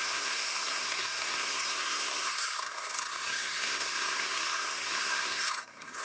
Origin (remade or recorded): remade